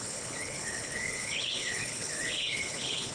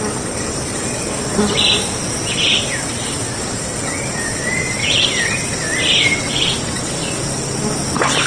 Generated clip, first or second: first